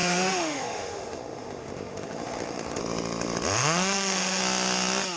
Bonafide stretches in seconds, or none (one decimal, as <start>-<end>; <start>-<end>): 2.8-3.6; 4.4-5.2